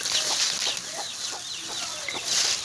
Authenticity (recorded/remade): recorded